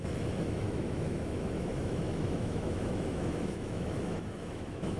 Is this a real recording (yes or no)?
no